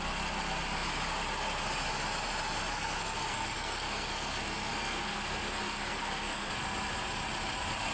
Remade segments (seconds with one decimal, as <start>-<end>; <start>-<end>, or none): 2.7-6.5